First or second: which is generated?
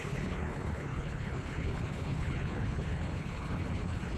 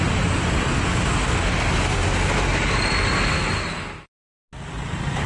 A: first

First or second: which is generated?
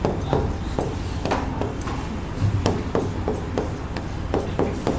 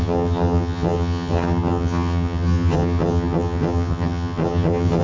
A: second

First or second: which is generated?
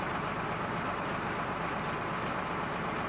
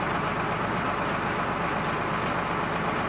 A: first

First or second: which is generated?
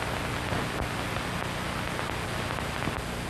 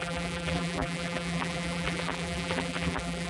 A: second